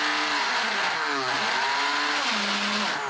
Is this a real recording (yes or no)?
yes